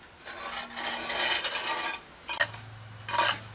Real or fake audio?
real